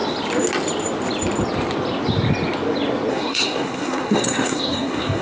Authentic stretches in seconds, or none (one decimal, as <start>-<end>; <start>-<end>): 0.0-3.1